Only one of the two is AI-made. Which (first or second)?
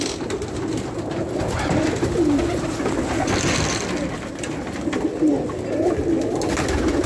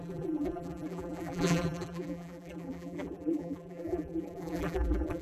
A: second